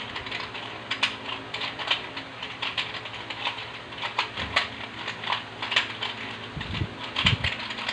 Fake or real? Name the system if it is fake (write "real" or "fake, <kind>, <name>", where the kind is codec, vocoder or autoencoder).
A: real